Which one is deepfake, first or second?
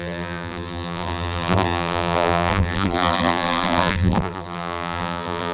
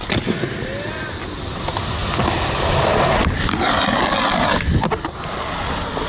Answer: first